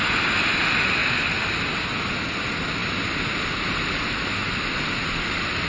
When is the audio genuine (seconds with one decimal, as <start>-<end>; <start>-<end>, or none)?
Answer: 0.0-5.7